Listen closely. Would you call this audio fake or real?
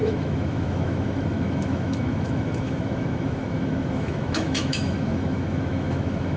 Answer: fake